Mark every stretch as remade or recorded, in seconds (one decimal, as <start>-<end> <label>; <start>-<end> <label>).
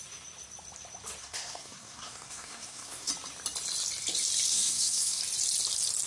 0.0-1.2 recorded; 1.2-3.1 remade; 3.1-4.5 recorded; 4.5-5.2 remade; 5.2-6.1 recorded